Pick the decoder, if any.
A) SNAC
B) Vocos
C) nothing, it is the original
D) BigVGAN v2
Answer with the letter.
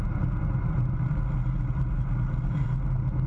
C